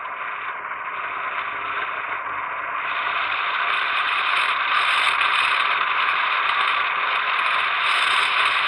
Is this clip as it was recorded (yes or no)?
yes